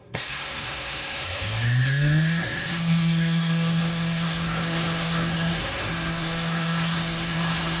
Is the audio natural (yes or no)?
no